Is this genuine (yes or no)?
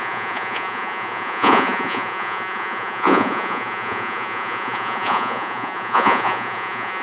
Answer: no